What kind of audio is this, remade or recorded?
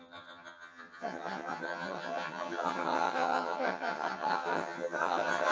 remade